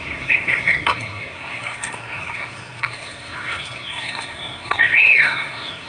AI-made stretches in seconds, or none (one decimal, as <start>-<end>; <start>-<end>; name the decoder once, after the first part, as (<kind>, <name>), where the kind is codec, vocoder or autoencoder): 0.0-5.9 (codec, SNAC)